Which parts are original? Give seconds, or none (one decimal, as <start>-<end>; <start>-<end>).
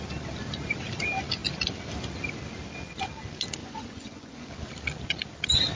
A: 0.0-3.6; 4.5-5.8